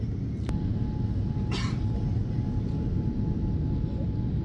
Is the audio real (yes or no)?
yes